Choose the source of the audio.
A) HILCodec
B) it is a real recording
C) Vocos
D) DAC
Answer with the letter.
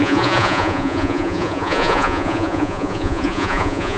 C